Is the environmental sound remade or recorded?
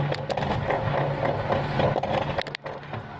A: recorded